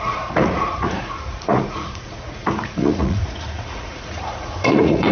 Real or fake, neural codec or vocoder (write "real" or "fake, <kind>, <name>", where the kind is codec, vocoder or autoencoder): fake, vocoder, Vocos